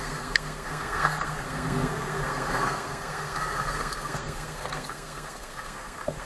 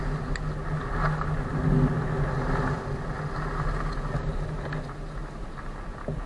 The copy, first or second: first